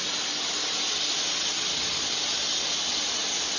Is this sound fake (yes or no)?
no